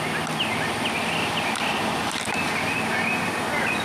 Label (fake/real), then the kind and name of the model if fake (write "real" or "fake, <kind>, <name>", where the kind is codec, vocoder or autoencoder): real